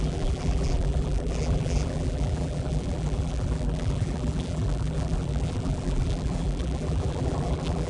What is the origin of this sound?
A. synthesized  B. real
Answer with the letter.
A